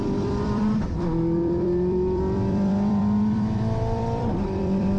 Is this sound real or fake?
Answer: fake